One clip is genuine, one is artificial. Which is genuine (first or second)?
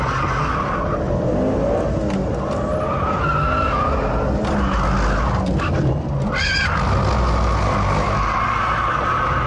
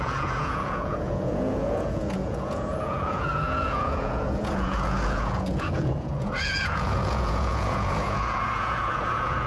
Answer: first